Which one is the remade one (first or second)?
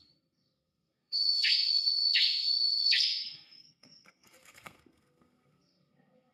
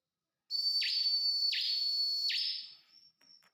first